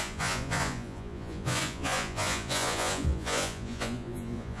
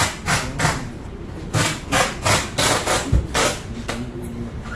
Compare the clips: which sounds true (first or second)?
second